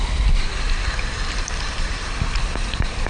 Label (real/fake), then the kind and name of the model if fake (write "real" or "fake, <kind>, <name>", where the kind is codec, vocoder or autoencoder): fake, vocoder, BigVGAN v2